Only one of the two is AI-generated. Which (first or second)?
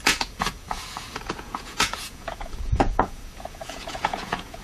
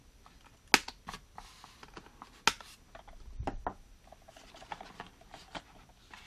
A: first